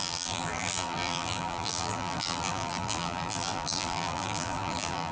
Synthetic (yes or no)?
yes